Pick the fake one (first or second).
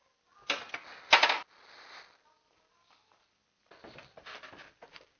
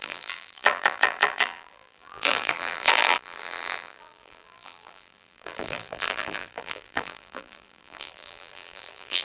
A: second